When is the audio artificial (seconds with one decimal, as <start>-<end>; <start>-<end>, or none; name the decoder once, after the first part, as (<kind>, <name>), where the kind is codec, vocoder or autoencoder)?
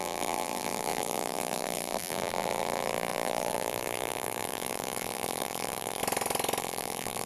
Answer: 0.0-6.0 (vocoder, BigVGAN v2); 6.6-7.3